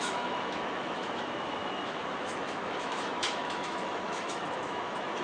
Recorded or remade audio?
remade